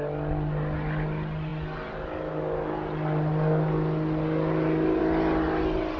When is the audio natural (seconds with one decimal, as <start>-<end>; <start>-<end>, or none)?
0.0-6.0

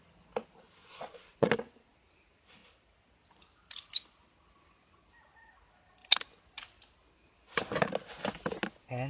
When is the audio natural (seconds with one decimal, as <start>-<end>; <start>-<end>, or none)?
0.0-0.8; 1.5-9.1

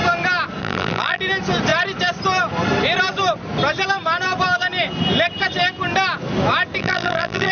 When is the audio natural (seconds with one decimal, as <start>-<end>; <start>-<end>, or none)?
0.0-0.6; 1.2-6.8

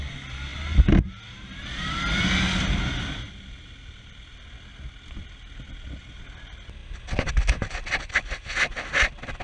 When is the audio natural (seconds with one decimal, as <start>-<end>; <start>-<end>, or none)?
0.0-9.4

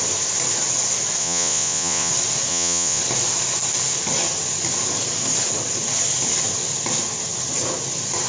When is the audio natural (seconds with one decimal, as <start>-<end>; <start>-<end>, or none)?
0.0-1.2; 2.1-2.5; 3.0-8.3

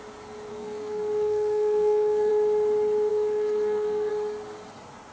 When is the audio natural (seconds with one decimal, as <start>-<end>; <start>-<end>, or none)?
0.0-0.5; 2.3-3.1; 4.1-5.1

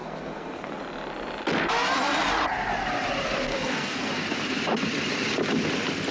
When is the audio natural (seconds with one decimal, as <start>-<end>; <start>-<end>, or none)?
0.8-3.5; 4.1-6.1

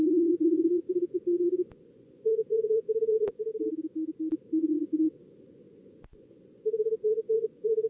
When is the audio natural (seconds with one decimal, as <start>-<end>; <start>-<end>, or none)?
3.5-4.6